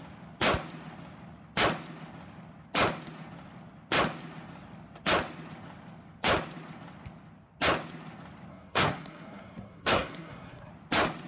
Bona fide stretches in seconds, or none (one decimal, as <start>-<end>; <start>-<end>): 0.0-8.5; 10.7-11.3